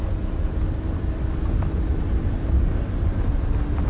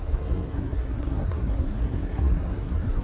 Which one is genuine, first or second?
first